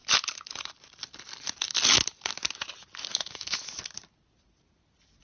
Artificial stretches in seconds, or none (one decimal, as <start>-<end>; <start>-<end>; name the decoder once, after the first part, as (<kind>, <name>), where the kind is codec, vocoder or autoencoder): 3.1-3.8 (autoencoder, DAC-VAE)